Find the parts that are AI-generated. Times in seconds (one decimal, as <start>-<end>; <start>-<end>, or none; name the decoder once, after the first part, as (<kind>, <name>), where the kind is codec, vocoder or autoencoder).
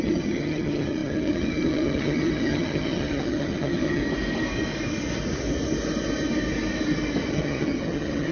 0.0-4.0 (vocoder, HiFi-GAN); 7.3-8.3